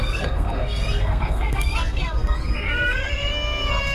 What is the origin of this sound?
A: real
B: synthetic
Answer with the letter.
B